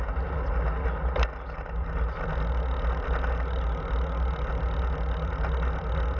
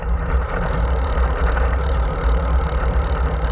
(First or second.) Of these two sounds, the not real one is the second